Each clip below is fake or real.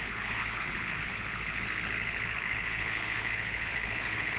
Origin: fake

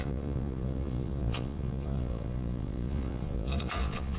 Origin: fake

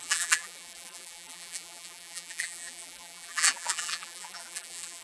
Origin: fake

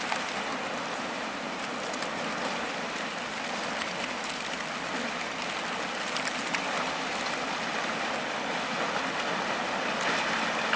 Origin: real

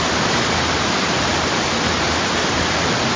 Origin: real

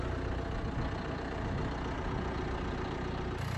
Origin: real